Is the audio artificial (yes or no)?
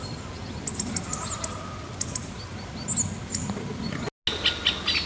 no